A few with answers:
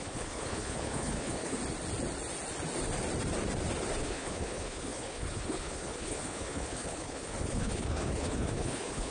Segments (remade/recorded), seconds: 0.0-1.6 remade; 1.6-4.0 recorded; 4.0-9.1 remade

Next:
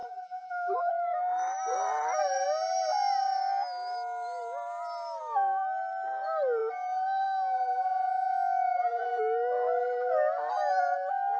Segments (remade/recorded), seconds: 0.0-0.9 remade; 0.9-11.4 recorded